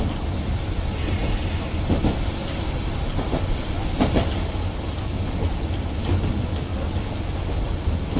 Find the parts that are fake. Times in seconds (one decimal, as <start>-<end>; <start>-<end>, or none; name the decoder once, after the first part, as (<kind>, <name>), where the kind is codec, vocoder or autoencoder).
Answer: none